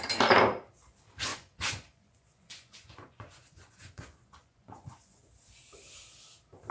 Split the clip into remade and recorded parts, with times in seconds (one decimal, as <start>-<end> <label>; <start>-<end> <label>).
0.0-1.3 recorded; 1.3-5.3 remade; 5.3-6.7 recorded